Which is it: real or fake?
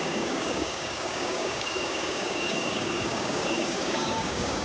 fake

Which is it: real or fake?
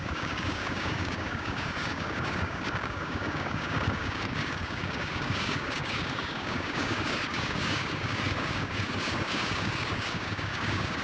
fake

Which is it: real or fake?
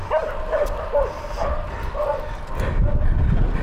real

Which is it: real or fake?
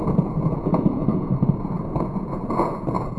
fake